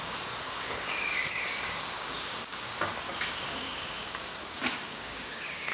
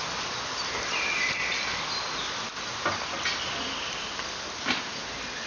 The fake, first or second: first